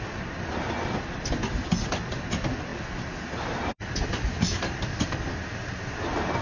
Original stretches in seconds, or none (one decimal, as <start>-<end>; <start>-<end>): 0.0-2.7; 5.0-6.4

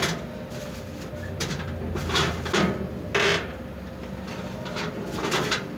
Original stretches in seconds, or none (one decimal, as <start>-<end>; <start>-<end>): 0.0-2.0; 2.6-5.8

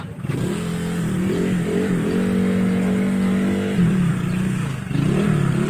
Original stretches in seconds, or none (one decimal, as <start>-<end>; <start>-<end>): 0.0-5.7

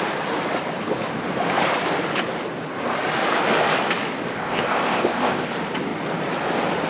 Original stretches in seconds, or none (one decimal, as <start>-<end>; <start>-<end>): 0.0-4.3; 5.5-6.9

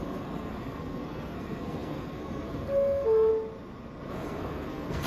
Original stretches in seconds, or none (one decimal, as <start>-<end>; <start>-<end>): 3.3-4.1

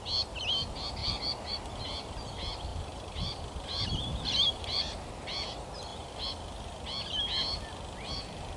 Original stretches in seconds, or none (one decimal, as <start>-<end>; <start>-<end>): 0.0-2.7; 5.1-8.6

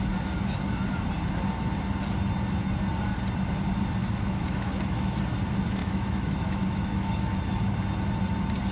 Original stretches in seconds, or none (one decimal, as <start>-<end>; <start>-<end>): 0.0-4.0; 5.2-5.8; 7.4-8.7

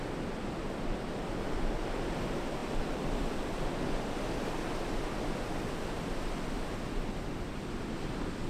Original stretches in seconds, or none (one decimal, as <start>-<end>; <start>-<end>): 0.0-8.5